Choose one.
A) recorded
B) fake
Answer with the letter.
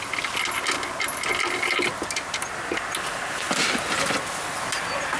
A